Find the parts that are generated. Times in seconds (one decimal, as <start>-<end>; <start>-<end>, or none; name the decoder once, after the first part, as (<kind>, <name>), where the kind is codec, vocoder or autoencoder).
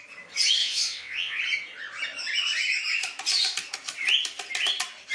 0.6-1.4 (vocoder, WaveNeXt)